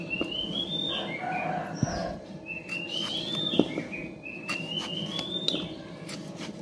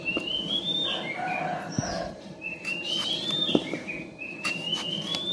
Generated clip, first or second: second